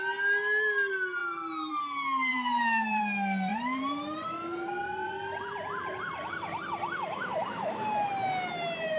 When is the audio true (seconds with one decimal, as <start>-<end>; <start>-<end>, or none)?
0.0-2.3; 3.0-3.5; 8.1-9.0

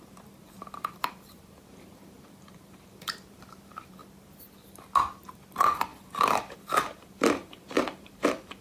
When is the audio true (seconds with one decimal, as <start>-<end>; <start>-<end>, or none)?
4.0-5.5

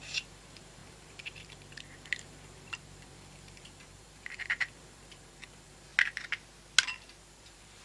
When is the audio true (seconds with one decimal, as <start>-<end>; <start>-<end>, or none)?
5.9-7.2

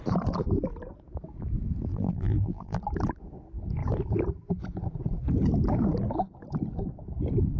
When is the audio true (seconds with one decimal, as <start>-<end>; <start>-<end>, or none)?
0.0-1.9; 2.8-7.6

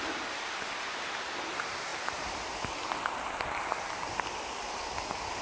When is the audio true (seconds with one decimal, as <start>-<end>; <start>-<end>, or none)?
0.0-5.4

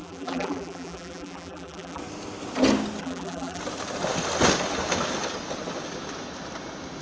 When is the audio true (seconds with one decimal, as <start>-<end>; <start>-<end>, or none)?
2.0-3.0; 3.6-7.0

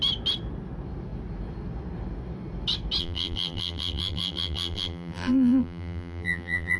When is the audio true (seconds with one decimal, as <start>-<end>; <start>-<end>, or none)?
0.0-3.0

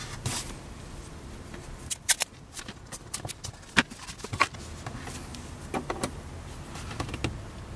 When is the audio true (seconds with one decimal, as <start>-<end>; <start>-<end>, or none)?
1.4-5.3; 6.3-7.8